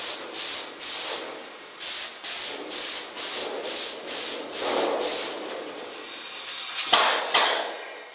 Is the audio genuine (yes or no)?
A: yes